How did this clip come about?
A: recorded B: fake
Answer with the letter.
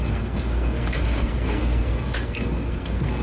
B